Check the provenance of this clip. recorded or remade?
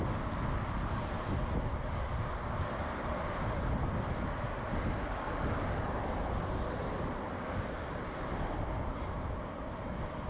recorded